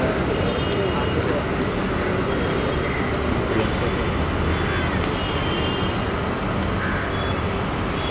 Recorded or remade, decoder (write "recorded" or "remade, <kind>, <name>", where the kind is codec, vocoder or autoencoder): recorded